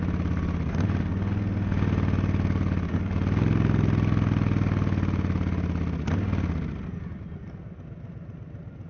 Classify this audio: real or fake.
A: real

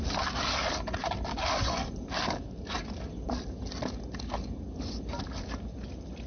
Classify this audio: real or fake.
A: real